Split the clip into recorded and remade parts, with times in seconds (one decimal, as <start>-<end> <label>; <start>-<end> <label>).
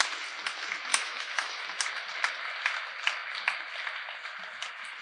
0.0-0.9 recorded; 0.9-1.6 remade; 1.6-5.0 recorded